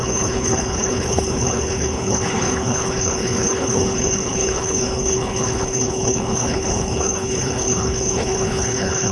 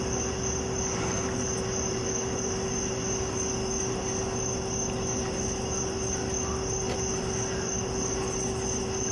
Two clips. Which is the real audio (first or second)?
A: second